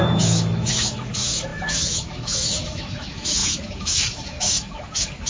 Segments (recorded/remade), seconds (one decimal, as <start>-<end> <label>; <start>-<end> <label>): 0.0-5.3 remade